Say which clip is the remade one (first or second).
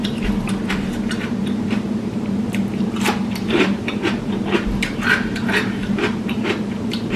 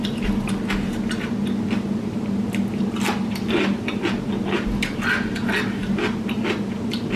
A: first